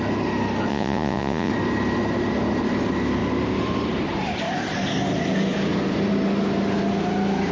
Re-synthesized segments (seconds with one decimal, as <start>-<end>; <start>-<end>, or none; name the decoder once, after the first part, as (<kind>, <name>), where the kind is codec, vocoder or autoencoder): 0.7-1.5 (vocoder, Vocos)